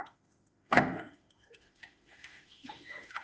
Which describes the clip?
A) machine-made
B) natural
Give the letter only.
A